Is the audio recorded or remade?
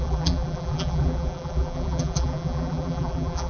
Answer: remade